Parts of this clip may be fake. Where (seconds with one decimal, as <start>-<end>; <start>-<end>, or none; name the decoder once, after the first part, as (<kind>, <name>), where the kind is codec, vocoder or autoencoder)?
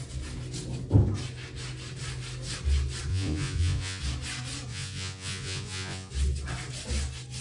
3.1-4.0 (vocoder, Vocos); 4.7-6.1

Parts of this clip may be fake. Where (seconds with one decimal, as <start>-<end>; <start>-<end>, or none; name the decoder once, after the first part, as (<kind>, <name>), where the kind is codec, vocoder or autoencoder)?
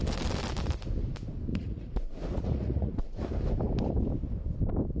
1.5-3.2 (vocoder, Vocos)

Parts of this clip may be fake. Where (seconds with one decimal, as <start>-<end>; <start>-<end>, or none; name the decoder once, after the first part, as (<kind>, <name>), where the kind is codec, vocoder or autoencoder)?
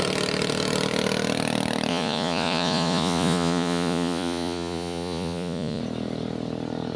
1.9-5.8 (vocoder, Vocos)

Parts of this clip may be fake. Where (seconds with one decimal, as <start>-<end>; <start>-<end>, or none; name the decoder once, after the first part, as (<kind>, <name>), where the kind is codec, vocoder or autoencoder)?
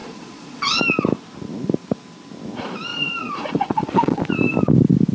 0.0-0.8 (vocoder, Vocos); 2.9-4.2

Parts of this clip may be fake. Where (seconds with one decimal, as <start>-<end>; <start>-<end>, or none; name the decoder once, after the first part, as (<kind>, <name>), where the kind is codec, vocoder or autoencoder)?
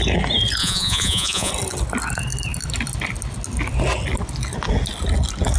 0.6-1.5 (vocoder, Vocos)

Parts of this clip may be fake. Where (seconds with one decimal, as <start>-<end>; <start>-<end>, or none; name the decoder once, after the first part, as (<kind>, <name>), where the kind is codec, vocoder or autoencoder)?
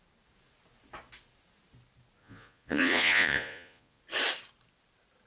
2.2-4.0 (vocoder, Vocos)